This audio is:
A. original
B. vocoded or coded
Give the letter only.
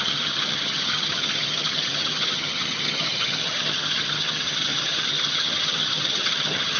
B